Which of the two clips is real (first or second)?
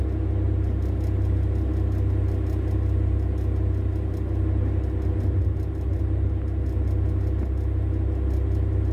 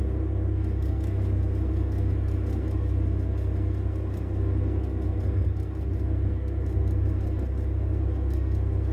first